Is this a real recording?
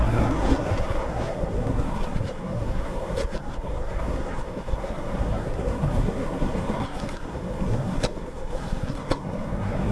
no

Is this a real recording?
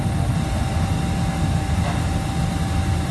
yes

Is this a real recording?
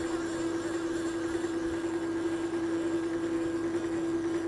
yes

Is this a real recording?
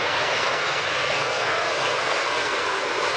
no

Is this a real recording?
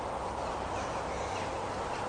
yes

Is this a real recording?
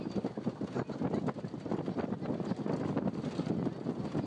yes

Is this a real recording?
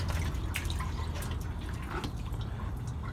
yes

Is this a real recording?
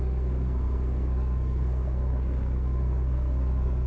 no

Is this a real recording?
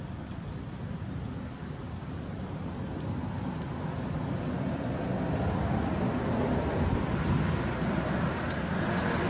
yes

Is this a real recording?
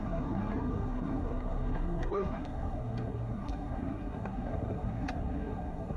no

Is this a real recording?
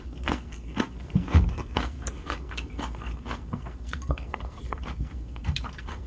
no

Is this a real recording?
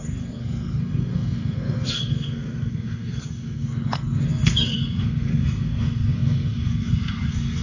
no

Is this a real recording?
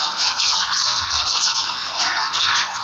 no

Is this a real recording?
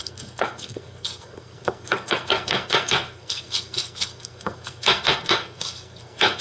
no